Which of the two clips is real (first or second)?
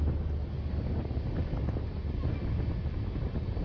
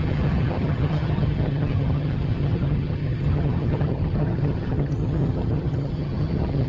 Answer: first